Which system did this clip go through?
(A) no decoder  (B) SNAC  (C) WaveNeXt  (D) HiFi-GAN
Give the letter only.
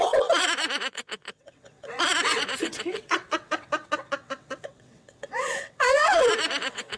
C